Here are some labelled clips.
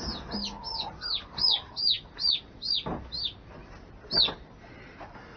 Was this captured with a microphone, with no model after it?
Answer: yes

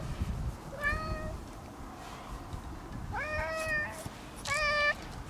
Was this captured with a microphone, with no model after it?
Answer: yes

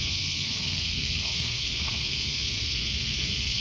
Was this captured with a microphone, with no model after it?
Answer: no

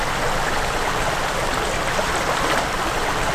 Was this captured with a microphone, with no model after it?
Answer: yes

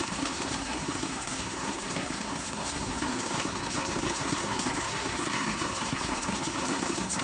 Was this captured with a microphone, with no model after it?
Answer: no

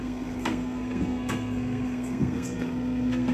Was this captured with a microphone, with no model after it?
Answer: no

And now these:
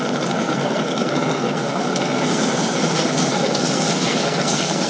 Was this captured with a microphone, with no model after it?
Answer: no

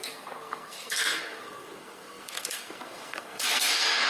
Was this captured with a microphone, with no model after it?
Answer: no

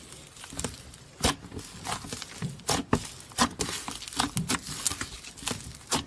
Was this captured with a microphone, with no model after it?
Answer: yes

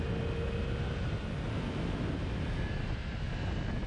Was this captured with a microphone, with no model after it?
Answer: yes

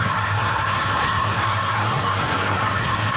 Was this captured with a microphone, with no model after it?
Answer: no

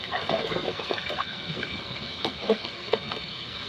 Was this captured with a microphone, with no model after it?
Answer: no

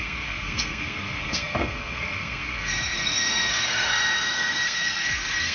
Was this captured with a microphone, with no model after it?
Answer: no